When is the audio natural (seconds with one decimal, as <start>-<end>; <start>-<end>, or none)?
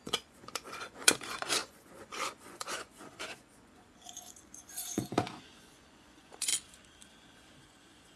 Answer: 6.5-7.1